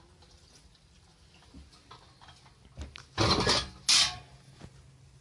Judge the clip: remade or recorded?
recorded